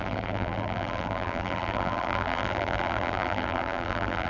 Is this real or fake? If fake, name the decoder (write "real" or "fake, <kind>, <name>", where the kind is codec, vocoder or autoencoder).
fake, vocoder, BigVGAN v2